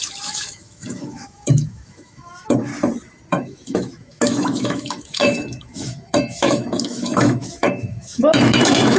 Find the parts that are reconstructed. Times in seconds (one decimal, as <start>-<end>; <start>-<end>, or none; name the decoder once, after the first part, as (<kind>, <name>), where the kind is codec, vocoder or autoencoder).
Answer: 0.0-2.7 (autoencoder, DAC-VAE); 3.3-9.0